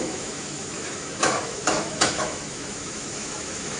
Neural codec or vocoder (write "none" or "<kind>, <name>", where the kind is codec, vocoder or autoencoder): autoencoder, DAC-VAE